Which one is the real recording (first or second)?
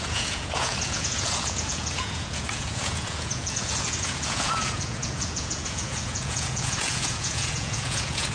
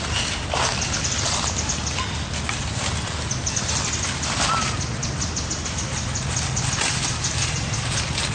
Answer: second